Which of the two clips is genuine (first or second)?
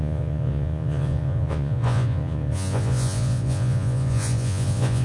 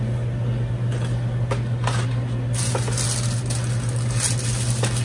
second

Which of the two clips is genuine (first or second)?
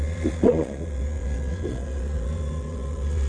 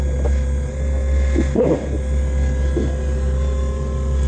second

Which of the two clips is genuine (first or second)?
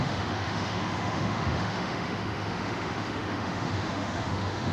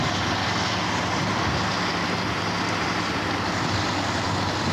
second